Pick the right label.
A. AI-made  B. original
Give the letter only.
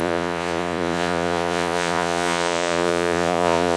A